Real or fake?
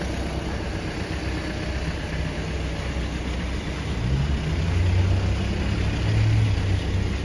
real